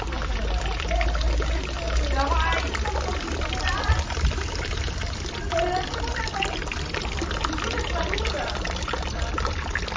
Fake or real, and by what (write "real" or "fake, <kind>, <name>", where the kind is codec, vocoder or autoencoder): real